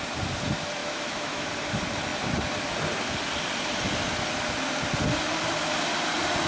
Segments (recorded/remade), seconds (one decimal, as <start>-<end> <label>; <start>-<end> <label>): 0.0-0.8 recorded; 0.8-1.5 remade; 1.5-6.5 recorded